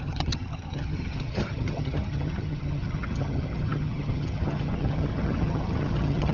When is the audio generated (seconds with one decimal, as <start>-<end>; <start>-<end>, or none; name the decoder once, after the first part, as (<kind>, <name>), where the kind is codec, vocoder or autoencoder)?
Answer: 0.0-6.3 (vocoder, HiFi-GAN)